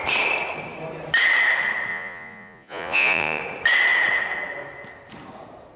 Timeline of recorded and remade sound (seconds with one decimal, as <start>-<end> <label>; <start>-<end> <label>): 0.0-1.9 recorded; 1.9-3.4 remade; 3.4-5.8 recorded